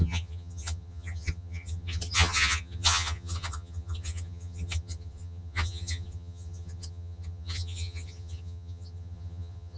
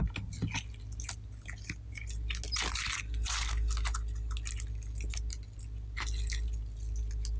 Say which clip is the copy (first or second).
first